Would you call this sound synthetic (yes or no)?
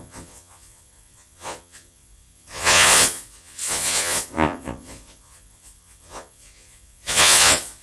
yes